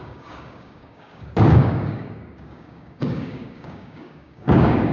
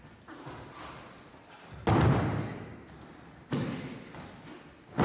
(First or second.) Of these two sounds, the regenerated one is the first